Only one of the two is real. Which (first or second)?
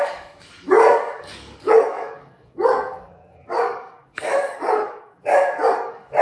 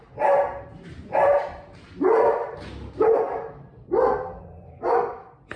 second